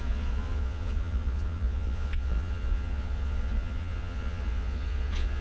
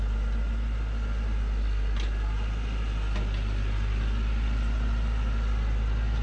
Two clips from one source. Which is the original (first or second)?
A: second